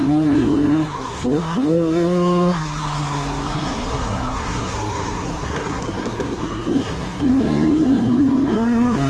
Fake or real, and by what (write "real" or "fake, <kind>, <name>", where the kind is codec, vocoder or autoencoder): fake, codec, SNAC